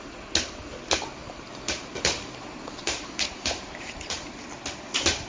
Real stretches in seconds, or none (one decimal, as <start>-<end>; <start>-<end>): 0.0-1.2; 4.4-5.3